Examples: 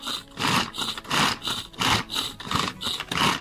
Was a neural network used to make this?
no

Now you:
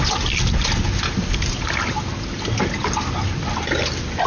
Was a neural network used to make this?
no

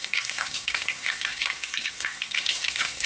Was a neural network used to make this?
yes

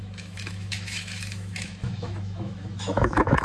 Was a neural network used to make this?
yes